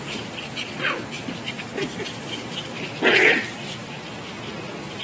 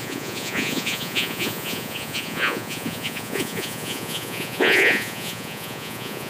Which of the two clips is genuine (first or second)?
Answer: first